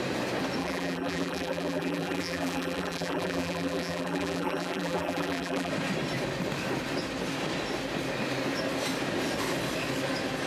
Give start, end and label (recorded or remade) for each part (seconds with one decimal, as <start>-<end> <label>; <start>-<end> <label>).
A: 0.0-0.6 recorded; 0.6-5.7 remade; 5.7-10.5 recorded